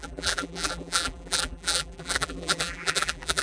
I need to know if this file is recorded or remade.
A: remade